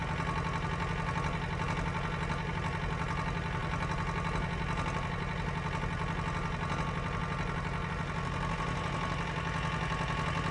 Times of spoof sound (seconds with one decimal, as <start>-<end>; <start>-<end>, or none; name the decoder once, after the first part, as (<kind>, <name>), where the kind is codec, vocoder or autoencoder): none